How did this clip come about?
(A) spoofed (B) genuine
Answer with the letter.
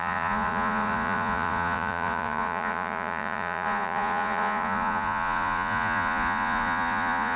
A